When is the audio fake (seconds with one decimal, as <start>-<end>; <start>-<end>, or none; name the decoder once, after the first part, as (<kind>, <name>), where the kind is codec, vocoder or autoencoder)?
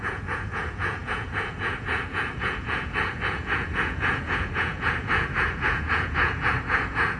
0.0-7.2 (vocoder, Vocos)